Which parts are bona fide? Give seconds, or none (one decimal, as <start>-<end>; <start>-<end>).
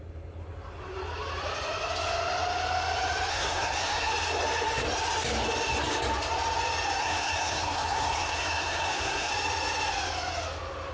0.0-3.3; 4.1-7.0; 9.3-10.9